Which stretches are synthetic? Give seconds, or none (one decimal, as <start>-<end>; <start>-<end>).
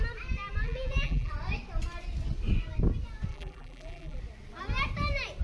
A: 0.6-1.3; 3.3-4.2